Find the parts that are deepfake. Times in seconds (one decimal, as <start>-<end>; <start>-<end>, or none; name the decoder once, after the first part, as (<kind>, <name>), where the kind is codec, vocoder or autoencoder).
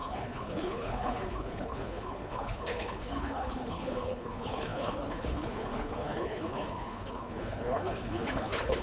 0.0-8.8 (codec, HILCodec)